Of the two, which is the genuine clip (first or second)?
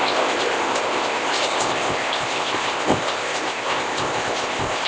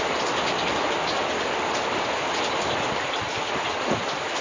second